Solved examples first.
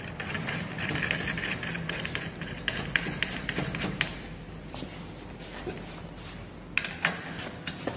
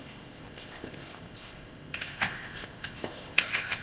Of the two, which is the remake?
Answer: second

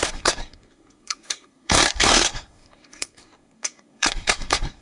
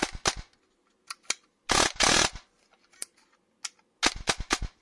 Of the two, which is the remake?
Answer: first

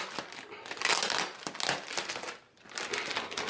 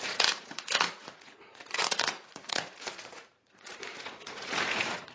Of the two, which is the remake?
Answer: second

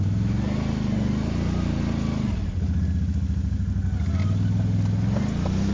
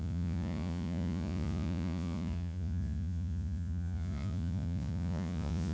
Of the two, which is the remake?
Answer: second